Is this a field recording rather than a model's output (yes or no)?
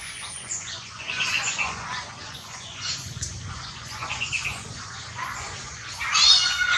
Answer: no